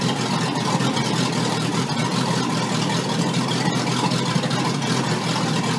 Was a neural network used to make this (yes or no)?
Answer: no